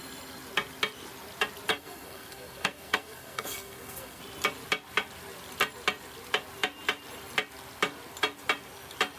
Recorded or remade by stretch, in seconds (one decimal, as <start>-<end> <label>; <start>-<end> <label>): 0.0-1.7 recorded; 1.7-4.2 remade; 4.2-9.2 recorded